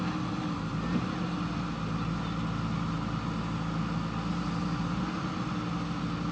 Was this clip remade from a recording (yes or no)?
no